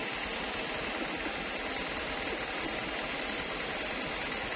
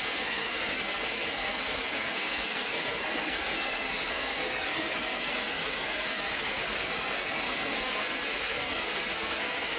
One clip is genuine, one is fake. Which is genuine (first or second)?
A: first